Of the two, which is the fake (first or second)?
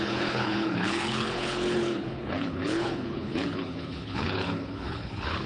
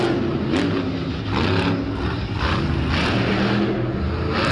first